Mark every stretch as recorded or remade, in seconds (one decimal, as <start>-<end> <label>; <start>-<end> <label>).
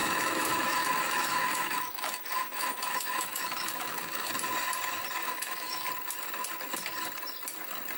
0.0-4.3 remade; 4.3-5.2 recorded; 5.2-5.9 remade; 5.9-8.0 recorded